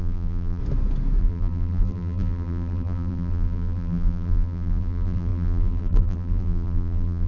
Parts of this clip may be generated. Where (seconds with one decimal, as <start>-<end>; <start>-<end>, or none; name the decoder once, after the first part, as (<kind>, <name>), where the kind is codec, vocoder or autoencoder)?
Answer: 0.0-0.6 (vocoder, BigVGAN v2); 1.2-7.3

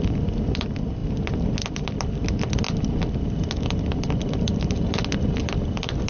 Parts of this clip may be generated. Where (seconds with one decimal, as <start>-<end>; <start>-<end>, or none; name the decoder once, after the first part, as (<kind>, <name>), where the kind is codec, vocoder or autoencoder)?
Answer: none

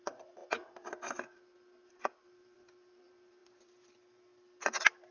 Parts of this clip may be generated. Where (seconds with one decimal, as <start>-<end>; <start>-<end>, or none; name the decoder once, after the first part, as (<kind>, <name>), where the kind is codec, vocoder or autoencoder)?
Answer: 0.0-0.4 (vocoder, BigVGAN v2); 1.9-3.4

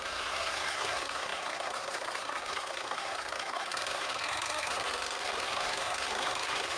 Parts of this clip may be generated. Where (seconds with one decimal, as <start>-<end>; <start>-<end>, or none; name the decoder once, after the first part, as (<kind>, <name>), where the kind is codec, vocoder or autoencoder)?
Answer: 0.0-6.8 (codec, SNAC)

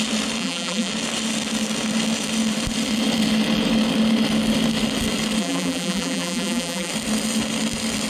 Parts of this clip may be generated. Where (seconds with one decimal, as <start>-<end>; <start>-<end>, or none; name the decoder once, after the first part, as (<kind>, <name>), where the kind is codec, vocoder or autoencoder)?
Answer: 0.4-0.9 (vocoder, BigVGAN v2); 5.4-6.9

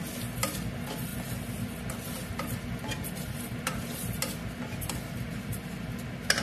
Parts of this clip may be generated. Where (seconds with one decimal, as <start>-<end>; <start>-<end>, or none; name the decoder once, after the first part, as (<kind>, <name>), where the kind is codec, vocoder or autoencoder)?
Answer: none